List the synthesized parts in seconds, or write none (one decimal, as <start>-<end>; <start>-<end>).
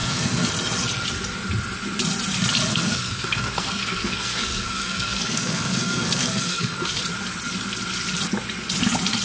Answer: 0.0-0.5; 2.7-7.0